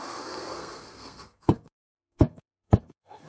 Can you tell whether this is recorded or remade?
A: remade